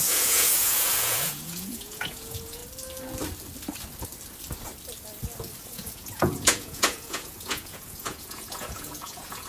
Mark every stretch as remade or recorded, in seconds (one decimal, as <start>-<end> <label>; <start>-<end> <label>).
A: 0.0-2.6 remade; 2.6-5.6 recorded; 5.6-9.5 remade